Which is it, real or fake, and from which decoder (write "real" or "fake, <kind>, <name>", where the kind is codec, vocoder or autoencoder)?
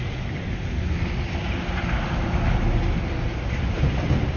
real